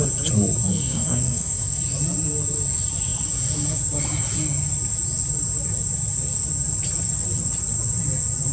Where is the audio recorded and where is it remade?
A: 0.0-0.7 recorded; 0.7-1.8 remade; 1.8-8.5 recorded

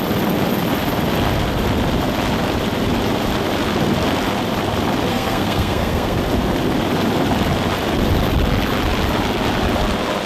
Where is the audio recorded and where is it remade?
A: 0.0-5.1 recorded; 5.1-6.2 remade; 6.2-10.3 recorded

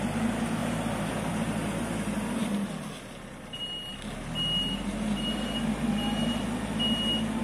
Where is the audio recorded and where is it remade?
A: 0.0-7.4 recorded

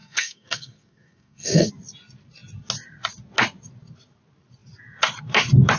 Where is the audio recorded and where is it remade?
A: 0.0-1.7 remade; 1.7-5.8 recorded

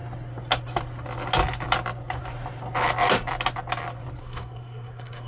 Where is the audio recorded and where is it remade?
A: 0.0-4.2 recorded; 4.2-5.3 remade

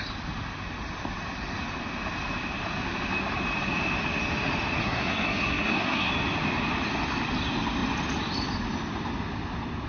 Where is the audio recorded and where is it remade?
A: 0.0-4.8 recorded; 4.8-6.1 remade; 6.1-9.9 recorded

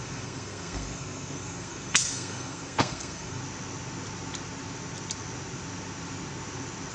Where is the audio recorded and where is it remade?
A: 0.0-3.4 remade; 3.4-6.9 recorded